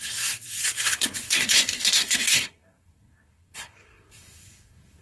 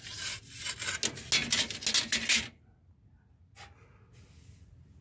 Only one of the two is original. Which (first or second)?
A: second